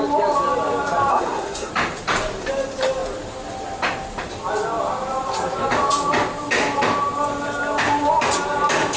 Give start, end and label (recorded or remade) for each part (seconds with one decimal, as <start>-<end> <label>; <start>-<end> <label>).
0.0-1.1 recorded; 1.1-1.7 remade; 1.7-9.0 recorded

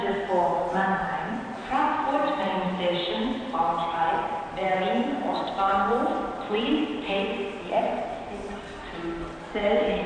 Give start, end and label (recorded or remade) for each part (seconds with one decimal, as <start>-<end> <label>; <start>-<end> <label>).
0.0-10.1 recorded

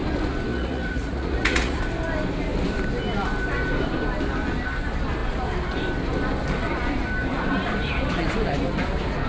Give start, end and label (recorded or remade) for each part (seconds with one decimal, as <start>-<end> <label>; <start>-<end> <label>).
0.0-0.5 recorded; 0.5-1.8 remade; 1.8-9.3 recorded

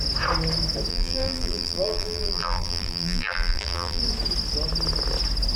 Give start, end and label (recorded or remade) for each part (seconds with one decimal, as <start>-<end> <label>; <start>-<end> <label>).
0.0-0.9 recorded; 0.9-4.0 remade; 4.0-5.6 recorded

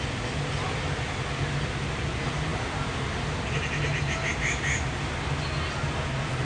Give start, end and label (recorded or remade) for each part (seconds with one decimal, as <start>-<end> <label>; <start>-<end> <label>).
0.0-6.4 recorded